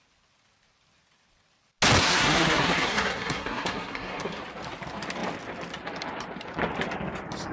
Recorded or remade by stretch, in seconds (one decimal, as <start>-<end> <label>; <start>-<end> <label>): 0.0-2.0 recorded; 2.0-4.4 remade; 4.4-7.5 recorded